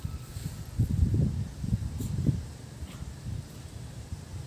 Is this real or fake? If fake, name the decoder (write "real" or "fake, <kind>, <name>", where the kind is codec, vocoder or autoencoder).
real